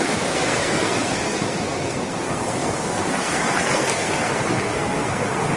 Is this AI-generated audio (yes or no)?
yes